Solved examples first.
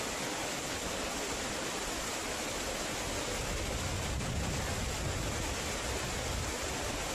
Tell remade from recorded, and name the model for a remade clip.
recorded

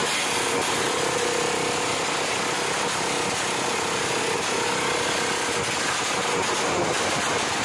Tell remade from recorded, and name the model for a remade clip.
recorded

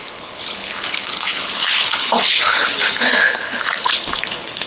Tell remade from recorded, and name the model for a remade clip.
remade, codec, HILCodec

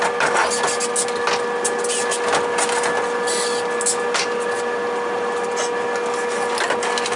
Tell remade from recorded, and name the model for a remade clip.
recorded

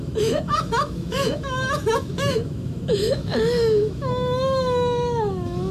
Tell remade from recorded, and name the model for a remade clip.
remade, autoencoder, DAC-VAE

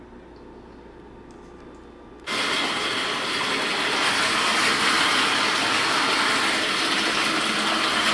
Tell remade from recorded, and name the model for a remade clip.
recorded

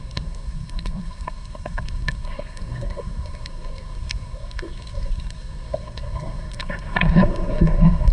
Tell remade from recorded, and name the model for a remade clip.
remade, codec, SNAC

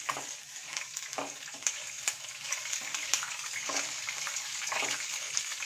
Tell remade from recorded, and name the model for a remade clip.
remade, codec, DAC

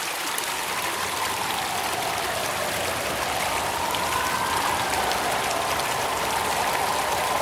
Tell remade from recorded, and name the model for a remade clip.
recorded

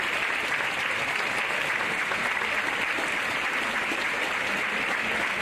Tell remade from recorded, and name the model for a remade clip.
recorded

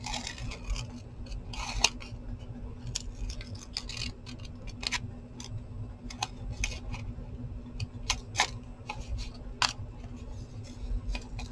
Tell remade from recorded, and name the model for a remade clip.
recorded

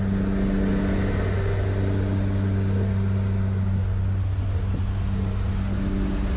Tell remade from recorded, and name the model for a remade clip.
recorded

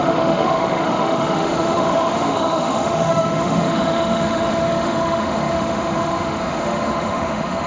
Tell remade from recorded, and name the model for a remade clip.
remade, autoencoder, DAC-VAE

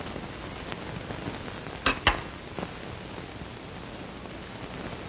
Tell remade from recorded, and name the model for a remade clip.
recorded